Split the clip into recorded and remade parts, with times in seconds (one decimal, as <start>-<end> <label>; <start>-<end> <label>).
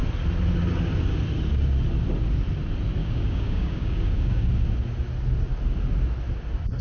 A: 0.0-3.0 recorded; 3.0-4.5 remade; 4.5-6.8 recorded